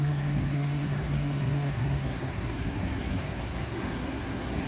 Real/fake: fake